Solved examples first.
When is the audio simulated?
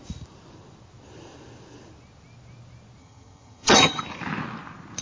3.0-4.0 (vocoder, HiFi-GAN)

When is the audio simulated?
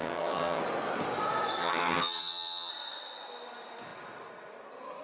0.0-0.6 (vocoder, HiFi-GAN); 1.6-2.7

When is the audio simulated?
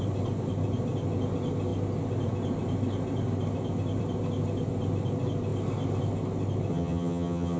6.7-7.6 (vocoder, HiFi-GAN)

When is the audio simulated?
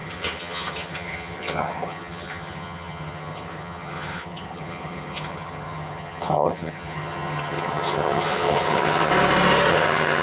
0.0-9.1 (vocoder, HiFi-GAN); 9.7-10.2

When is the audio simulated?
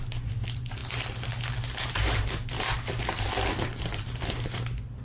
none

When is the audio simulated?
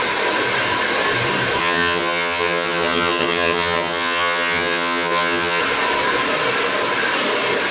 1.6-5.6 (vocoder, HiFi-GAN)